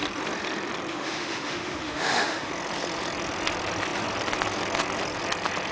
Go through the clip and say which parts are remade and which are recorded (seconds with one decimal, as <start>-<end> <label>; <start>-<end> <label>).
0.0-0.9 recorded; 0.9-2.5 remade; 2.5-5.7 recorded